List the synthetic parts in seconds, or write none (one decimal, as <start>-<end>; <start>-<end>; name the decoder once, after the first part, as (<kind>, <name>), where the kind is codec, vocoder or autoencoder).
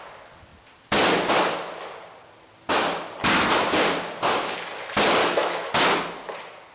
5.2-5.7 (autoencoder, DAC-VAE)